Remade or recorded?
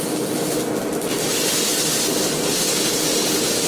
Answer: recorded